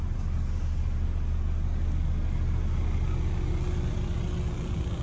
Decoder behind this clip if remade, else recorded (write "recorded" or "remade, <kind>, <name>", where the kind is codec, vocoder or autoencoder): recorded